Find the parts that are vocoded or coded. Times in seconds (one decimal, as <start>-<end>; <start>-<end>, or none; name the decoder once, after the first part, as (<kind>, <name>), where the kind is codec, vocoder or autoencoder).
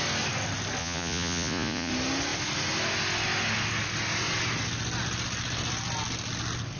0.8-1.9 (vocoder, Vocos)